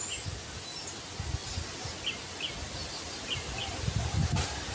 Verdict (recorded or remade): recorded